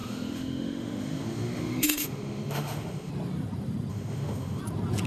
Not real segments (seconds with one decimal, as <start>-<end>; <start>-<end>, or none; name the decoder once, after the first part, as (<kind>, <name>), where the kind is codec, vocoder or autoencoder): 0.0-3.1 (autoencoder, DAC-VAE); 3.9-4.6